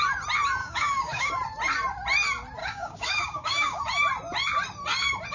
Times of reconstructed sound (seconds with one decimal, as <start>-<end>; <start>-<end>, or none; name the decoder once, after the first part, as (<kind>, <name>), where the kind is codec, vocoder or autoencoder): 0.6-1.3 (codec, DAC); 2.6-3.8